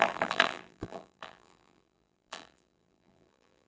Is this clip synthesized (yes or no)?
yes